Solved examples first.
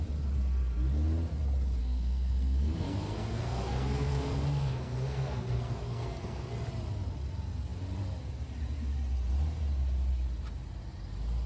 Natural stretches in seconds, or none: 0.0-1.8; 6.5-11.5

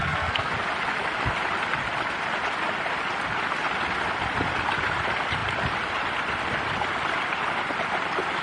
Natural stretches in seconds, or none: 0.5-8.4